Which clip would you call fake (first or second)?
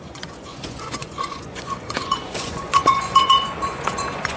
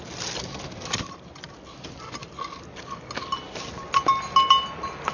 first